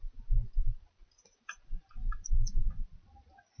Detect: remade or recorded recorded